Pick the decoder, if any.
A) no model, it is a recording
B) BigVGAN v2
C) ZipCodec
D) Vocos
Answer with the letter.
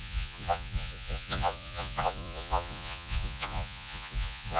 D